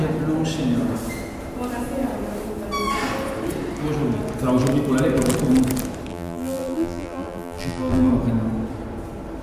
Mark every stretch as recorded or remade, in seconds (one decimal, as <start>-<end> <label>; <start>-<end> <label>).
0.0-6.1 recorded; 6.1-8.1 remade; 8.1-9.4 recorded